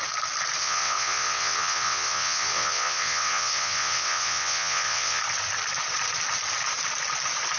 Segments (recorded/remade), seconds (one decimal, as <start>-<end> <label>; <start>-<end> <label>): 0.0-0.6 recorded; 0.6-5.2 remade; 5.2-7.6 recorded